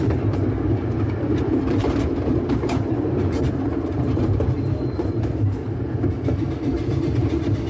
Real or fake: fake